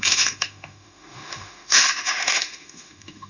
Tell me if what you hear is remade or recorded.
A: remade